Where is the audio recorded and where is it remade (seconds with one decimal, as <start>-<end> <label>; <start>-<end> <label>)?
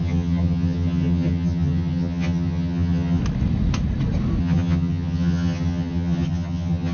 0.0-3.2 remade; 3.2-4.4 recorded; 4.4-6.9 remade